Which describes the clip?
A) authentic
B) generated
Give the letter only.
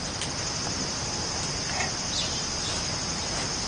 A